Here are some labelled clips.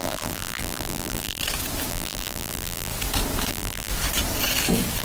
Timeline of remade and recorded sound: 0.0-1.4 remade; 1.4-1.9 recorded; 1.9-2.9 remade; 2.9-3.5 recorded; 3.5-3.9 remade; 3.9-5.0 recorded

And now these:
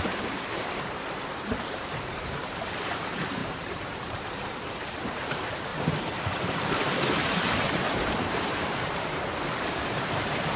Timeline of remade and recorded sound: 0.0-5.7 remade; 5.7-7.9 recorded; 7.9-10.6 remade

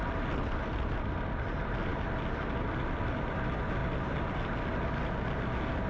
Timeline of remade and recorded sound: 0.0-5.9 recorded